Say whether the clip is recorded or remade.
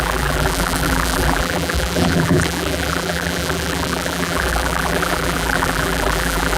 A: remade